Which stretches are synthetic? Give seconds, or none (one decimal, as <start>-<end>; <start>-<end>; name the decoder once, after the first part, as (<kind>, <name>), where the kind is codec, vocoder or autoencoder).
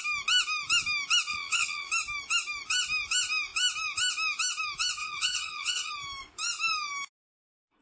1.3-1.9 (vocoder, WaveNeXt); 5.0-5.9